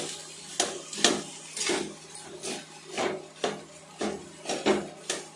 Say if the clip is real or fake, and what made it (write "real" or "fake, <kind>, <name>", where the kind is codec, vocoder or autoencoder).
real